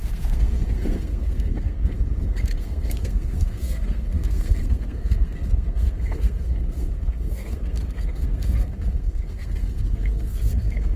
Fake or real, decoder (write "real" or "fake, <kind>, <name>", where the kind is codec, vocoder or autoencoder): fake, codec, SNAC